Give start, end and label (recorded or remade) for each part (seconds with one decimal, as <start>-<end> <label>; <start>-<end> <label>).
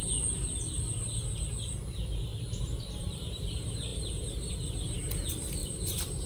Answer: 0.0-2.3 recorded; 2.3-3.5 remade; 3.5-5.6 recorded; 5.6-6.3 remade